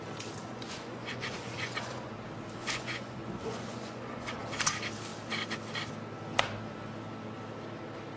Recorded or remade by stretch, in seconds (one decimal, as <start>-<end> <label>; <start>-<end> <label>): 0.0-0.4 recorded; 0.4-2.1 remade; 2.1-2.6 recorded; 2.6-4.4 remade; 4.4-8.2 recorded